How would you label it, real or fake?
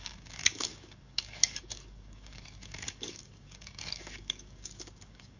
fake